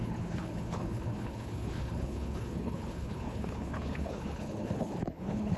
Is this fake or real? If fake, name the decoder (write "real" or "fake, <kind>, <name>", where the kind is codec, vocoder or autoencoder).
fake, codec, HILCodec